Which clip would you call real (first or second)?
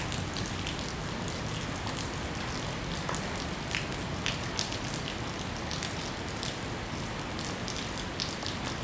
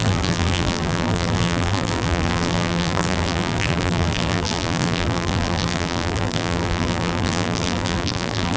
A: first